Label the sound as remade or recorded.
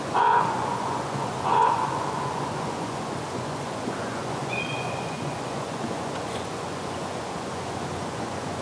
remade